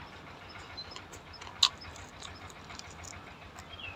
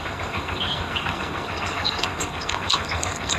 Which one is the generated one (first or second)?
second